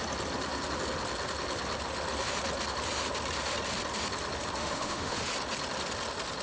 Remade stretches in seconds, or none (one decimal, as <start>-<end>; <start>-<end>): 4.6-5.2